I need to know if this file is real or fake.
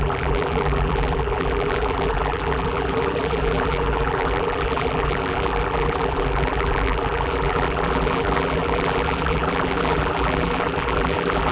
fake